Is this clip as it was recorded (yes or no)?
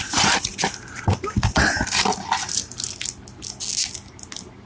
yes